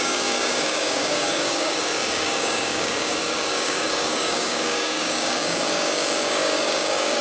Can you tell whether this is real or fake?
fake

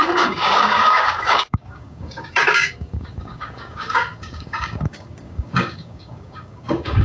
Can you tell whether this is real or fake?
fake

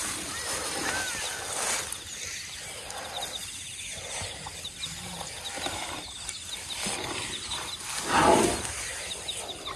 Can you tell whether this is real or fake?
real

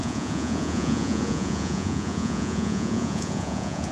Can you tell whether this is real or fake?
fake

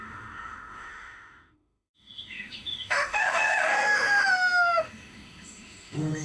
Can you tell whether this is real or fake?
fake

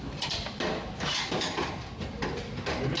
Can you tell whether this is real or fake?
real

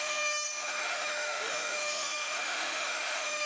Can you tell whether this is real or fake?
fake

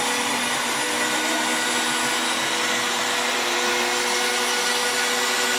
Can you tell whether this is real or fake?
real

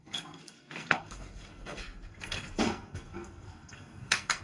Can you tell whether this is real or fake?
fake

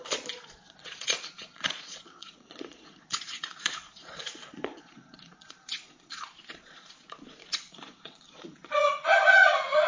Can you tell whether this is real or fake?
fake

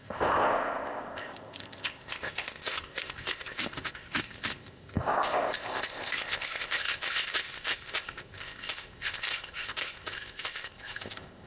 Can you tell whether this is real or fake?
fake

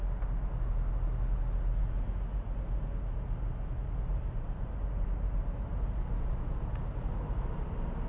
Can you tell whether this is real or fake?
real